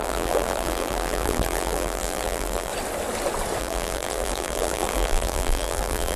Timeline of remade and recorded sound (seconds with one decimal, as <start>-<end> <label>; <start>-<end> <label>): 0.0-2.7 remade; 2.7-3.6 recorded; 3.6-6.2 remade